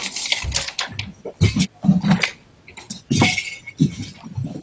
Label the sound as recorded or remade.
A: recorded